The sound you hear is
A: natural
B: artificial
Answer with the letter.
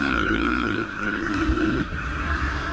B